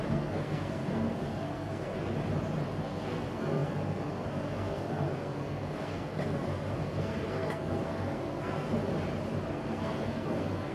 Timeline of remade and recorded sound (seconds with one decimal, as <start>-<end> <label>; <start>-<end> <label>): 0.0-2.1 remade; 2.1-2.8 recorded; 2.8-8.8 remade; 8.8-9.5 recorded; 9.5-10.7 remade